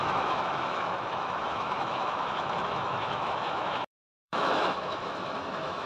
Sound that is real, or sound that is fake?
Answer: fake